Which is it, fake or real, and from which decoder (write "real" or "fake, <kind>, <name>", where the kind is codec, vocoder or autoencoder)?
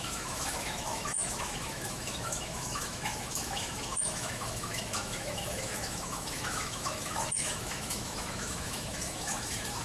fake, autoencoder, DAC-VAE